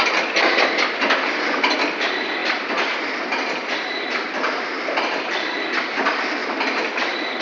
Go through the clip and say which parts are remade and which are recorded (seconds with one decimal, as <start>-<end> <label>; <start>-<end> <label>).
0.0-2.4 recorded; 2.4-5.2 remade; 5.2-6.4 recorded; 6.4-7.4 remade